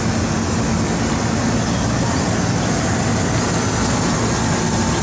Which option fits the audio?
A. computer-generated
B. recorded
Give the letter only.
B